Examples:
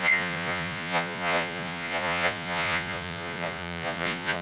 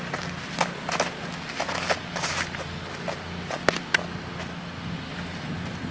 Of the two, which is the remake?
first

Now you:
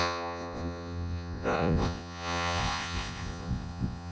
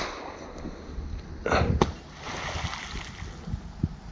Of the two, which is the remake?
first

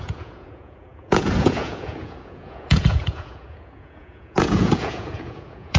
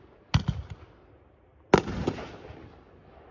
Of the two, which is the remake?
first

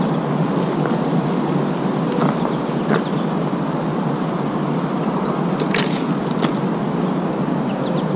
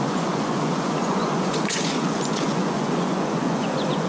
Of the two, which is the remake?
second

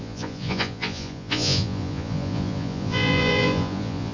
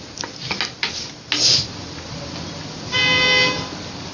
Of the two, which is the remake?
first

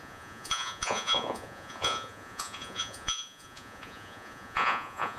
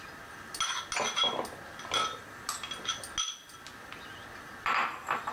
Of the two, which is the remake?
first